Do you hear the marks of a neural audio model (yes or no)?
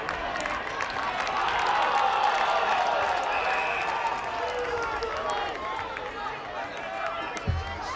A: no